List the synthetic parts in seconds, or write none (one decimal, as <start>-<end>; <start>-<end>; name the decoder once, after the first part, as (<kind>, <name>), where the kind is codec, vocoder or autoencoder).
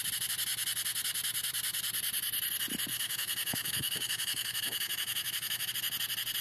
2.9-5.7 (autoencoder, DAC-VAE)